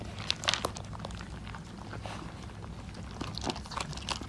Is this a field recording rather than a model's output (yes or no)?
yes